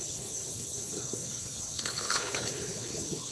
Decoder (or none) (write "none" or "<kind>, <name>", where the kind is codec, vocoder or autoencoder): codec, HILCodec